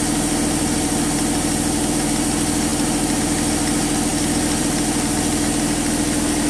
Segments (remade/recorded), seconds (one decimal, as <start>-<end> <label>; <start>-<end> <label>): 0.0-6.5 recorded